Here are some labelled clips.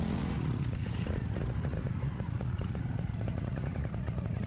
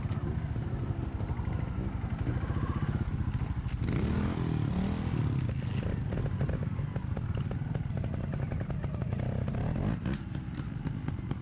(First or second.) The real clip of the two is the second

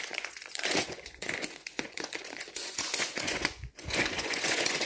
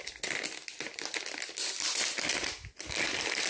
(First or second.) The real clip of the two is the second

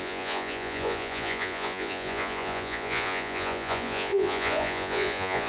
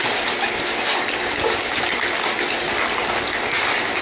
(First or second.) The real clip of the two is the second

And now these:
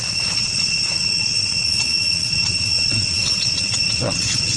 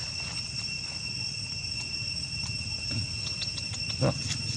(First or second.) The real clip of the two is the second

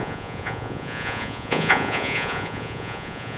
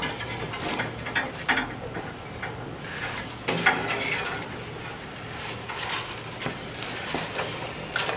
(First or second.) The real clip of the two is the second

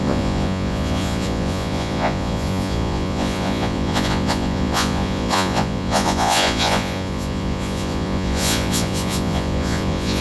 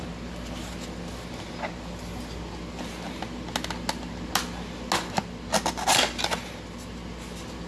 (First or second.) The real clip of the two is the second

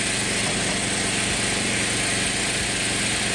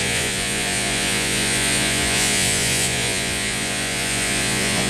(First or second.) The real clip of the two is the first